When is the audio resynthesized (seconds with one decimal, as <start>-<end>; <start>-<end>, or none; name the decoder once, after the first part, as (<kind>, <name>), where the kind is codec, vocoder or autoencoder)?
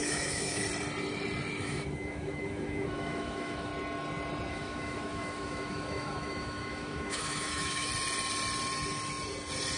0.0-0.6 (autoencoder, DAC-VAE); 1.6-3.7; 4.5-7.9